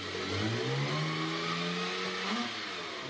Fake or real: real